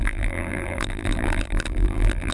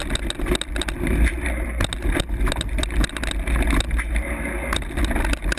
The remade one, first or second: first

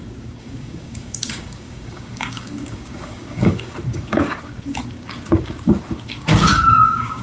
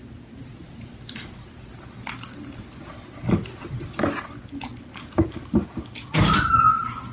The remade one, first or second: first